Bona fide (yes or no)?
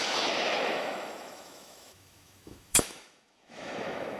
no